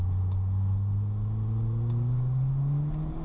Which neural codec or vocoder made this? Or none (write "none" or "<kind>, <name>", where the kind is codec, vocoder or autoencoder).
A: none